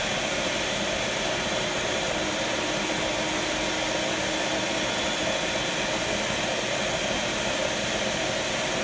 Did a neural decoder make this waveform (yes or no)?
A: no